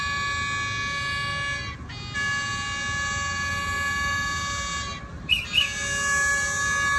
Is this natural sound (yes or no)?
yes